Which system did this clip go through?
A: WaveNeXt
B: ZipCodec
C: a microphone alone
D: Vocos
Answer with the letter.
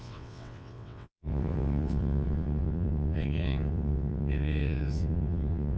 A